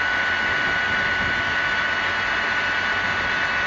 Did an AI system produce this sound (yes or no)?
no